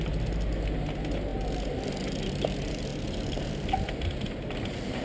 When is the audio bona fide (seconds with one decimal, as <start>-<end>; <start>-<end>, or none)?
0.0-5.0